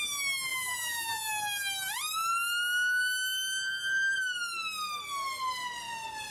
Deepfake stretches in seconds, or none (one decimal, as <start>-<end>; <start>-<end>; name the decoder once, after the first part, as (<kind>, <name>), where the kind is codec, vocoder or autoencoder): 0.5-1.3 (vocoder, BigVGAN v2)